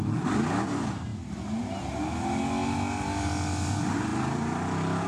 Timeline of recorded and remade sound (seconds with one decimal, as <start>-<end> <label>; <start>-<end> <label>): 0.0-5.1 recorded